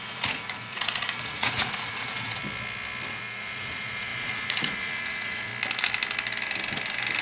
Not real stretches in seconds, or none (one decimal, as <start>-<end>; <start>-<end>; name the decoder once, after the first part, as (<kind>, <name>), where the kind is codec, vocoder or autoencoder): 0.0-2.4 (vocoder, Vocos); 3.1-5.5